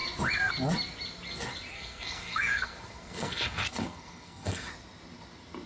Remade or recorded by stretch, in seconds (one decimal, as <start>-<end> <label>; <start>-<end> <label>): 0.0-1.7 recorded; 1.7-4.7 remade; 4.7-5.7 recorded

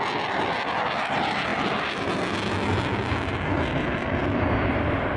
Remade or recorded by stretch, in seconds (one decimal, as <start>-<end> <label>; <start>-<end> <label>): 0.0-5.2 recorded

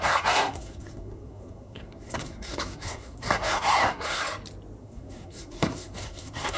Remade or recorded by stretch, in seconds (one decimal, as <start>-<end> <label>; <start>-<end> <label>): 0.0-4.2 remade; 4.2-4.8 recorded; 4.8-6.6 remade

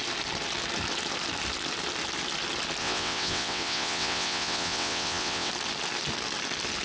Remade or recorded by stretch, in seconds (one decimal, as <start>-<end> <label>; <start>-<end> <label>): 0.0-2.8 recorded; 2.8-5.5 remade; 5.5-6.8 recorded

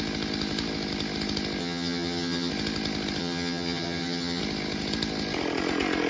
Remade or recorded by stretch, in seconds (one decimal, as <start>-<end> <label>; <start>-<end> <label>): 0.0-1.6 recorded; 1.6-2.5 remade; 2.5-3.2 recorded; 3.2-4.4 remade; 4.4-6.1 recorded